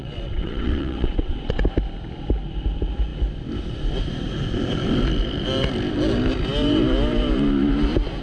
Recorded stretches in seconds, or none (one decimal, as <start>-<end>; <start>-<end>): 1.6-8.2